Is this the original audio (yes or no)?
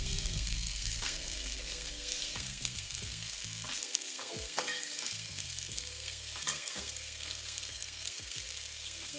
no